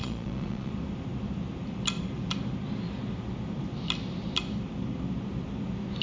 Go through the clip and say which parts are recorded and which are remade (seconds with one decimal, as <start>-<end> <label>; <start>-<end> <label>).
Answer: 0.0-0.7 remade; 0.7-6.0 recorded